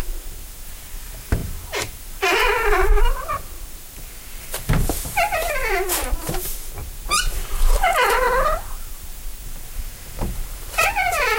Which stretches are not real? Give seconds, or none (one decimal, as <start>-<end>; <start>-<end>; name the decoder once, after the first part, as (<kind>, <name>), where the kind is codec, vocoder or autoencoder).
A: 0.0-11.4 (vocoder, BigVGAN v2)